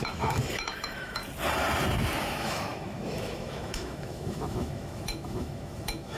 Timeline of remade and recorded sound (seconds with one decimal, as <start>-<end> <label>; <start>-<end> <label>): 0.0-1.2 remade; 1.2-2.2 recorded; 2.2-6.2 remade